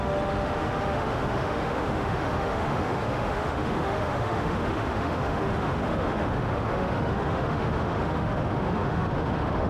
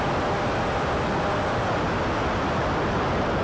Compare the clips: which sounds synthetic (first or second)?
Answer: first